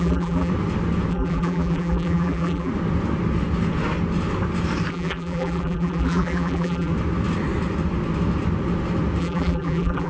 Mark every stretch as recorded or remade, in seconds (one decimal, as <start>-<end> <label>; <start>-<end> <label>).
0.0-0.5 remade; 0.5-1.1 recorded; 1.1-2.7 remade; 2.7-4.9 recorded; 4.9-6.9 remade; 6.9-9.2 recorded; 9.2-10.1 remade